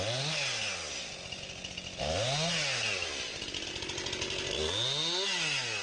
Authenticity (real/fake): real